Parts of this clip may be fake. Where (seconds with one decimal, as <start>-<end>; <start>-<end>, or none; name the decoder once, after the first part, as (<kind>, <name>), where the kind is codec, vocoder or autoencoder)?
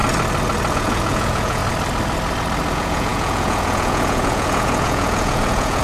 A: 0.7-1.6 (vocoder, Vocos); 2.7-5.8